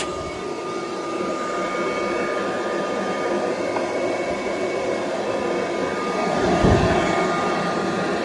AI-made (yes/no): no